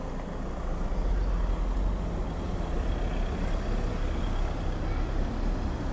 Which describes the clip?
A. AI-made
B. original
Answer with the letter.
B